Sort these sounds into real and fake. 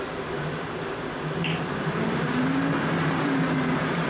fake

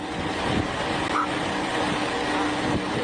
real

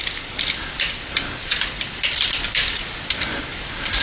real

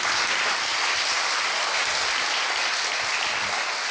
real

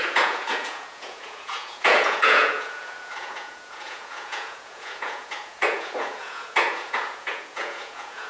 fake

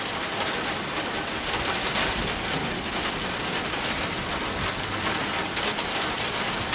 real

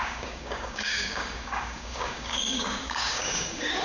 fake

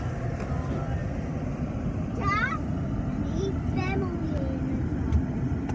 real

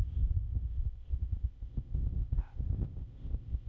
fake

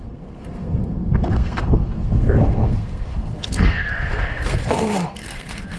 fake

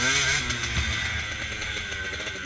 real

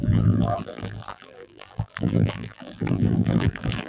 fake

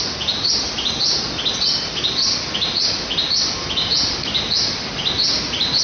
real